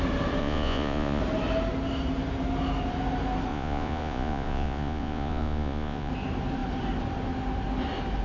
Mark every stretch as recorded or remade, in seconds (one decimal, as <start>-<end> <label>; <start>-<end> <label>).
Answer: 0.0-0.4 recorded; 0.4-1.2 remade; 1.2-3.5 recorded; 3.5-6.1 remade; 6.1-8.2 recorded